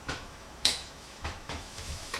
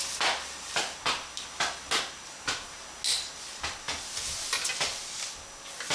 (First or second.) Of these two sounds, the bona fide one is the second